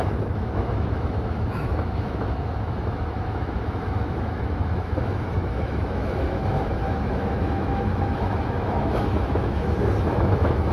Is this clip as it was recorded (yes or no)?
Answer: no